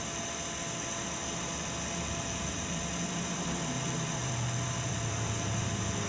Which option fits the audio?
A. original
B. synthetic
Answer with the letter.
B